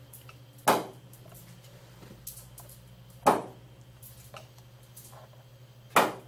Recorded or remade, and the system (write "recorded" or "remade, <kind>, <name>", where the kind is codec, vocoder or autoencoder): recorded